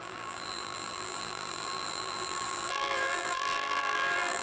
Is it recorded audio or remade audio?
remade